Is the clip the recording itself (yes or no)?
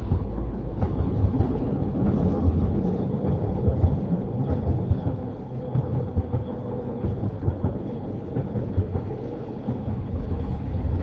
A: no